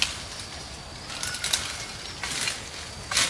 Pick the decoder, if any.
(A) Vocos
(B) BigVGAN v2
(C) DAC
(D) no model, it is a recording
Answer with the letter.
D